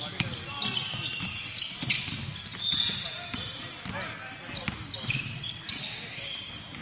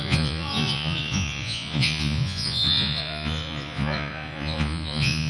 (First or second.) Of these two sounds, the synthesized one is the second